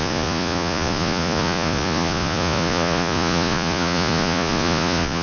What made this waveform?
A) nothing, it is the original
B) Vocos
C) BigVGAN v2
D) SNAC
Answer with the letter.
B